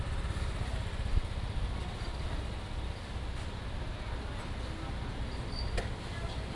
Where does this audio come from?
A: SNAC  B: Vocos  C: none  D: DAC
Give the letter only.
C